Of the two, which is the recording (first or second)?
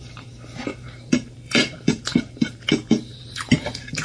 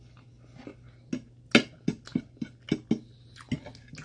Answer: second